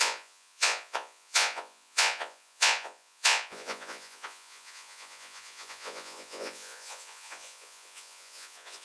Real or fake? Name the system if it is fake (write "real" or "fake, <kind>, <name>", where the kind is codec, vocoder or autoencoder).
fake, vocoder, Vocos